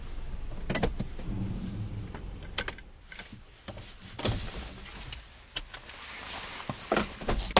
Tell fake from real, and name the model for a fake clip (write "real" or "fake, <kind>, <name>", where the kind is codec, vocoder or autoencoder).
real